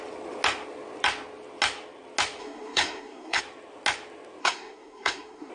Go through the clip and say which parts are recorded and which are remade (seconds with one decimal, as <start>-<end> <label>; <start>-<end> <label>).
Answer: 0.0-2.4 recorded; 2.4-3.4 remade; 3.4-4.4 recorded; 4.4-5.5 remade